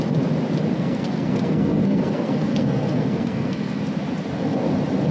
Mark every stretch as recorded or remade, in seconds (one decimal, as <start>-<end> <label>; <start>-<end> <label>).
0.0-0.7 recorded; 0.7-3.8 remade; 3.8-5.1 recorded